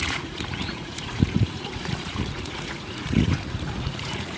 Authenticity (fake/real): fake